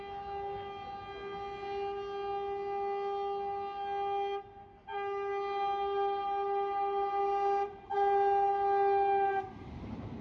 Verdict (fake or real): real